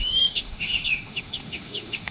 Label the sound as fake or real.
fake